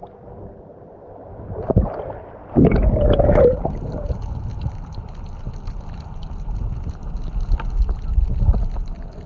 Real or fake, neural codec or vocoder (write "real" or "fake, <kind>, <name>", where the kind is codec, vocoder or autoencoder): real